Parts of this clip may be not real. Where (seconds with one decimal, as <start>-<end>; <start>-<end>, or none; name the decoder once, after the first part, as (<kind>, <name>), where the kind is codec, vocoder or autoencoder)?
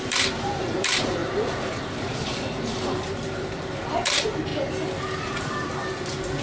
0.0-4.5 (vocoder, BigVGAN v2); 5.4-6.4